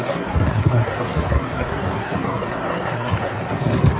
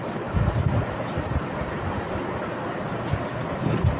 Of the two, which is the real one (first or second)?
second